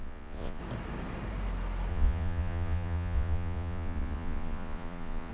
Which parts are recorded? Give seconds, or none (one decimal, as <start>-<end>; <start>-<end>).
0.6-1.9